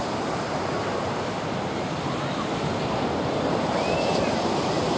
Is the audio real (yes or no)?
no